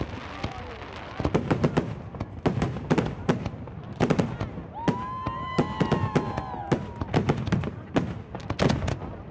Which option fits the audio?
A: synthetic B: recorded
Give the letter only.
B